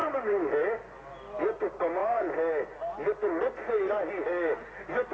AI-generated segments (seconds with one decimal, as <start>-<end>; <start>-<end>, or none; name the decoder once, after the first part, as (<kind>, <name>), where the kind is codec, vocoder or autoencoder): none